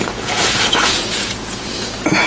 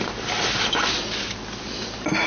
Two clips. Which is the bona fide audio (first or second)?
second